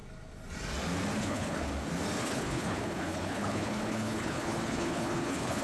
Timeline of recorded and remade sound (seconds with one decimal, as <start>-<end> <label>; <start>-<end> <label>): 0.0-1.2 recorded; 1.2-1.7 remade; 1.7-2.2 recorded; 2.2-5.6 remade